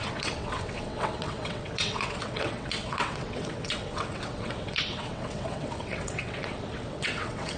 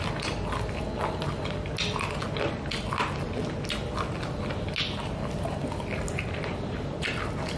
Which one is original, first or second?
second